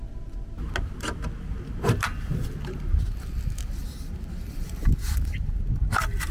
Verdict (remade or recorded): recorded